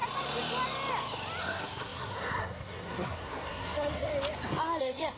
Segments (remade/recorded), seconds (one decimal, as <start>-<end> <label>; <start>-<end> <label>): 0.0-1.4 recorded; 1.4-4.1 remade; 4.1-4.8 recorded; 4.8-5.2 remade